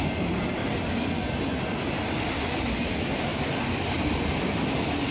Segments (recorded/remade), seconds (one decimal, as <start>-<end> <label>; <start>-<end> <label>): 0.0-0.6 recorded; 0.6-2.8 remade; 2.8-3.3 recorded; 3.3-4.5 remade; 4.5-5.1 recorded